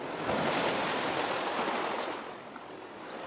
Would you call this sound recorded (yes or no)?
yes